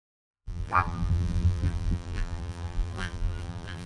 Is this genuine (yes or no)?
no